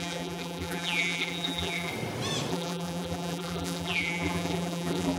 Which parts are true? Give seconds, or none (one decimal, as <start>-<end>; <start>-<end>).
1.9-2.5